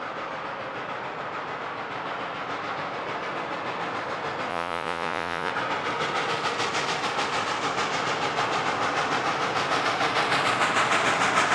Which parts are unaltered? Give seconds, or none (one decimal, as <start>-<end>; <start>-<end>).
0.0-4.5; 5.5-11.5